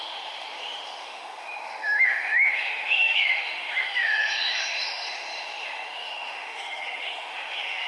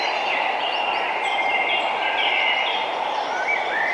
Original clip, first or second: second